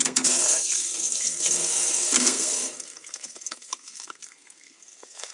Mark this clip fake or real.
fake